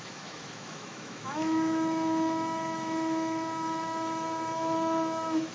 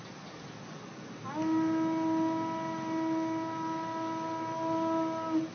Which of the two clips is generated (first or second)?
first